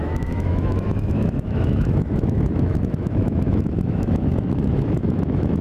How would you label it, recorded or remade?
remade